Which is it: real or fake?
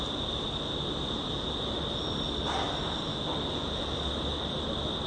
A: real